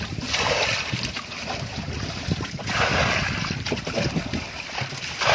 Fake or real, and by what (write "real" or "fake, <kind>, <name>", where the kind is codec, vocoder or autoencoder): real